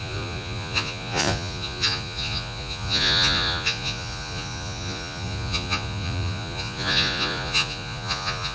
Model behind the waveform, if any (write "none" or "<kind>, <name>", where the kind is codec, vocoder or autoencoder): vocoder, Vocos